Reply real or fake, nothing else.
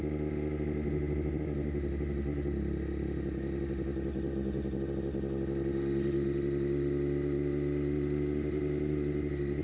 real